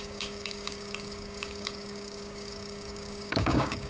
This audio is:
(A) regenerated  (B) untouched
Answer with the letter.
A